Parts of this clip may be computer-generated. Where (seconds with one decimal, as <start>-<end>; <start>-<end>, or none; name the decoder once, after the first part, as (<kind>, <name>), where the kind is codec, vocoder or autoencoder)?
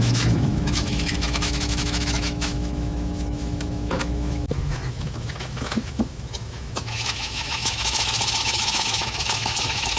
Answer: 0.0-10.0 (autoencoder, DAC-VAE)